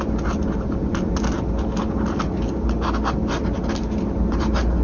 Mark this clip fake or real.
real